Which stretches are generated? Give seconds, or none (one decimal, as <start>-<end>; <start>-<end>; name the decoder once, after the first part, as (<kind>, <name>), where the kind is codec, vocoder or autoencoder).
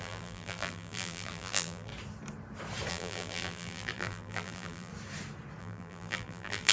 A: 0.0-1.9 (vocoder, BigVGAN v2); 2.9-4.9; 5.6-6.7